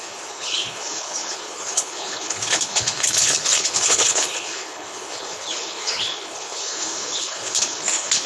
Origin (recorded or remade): remade